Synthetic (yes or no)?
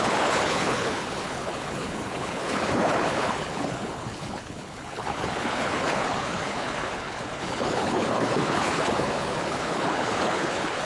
yes